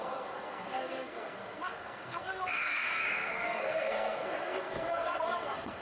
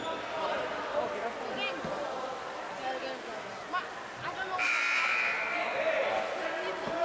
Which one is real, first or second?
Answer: second